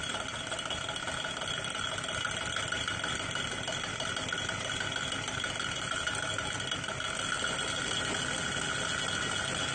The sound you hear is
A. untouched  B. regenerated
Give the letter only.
A